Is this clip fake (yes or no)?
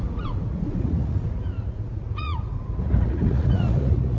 yes